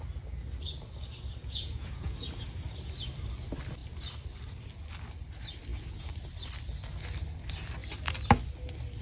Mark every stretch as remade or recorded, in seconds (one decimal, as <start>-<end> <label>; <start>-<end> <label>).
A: 0.0-1.4 recorded; 1.4-2.3 remade; 2.3-9.0 recorded